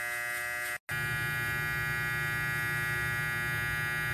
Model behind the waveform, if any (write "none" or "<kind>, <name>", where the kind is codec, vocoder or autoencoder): none